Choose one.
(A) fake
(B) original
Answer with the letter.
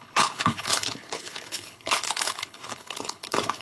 A